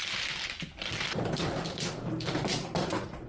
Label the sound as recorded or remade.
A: remade